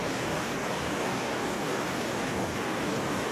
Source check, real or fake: fake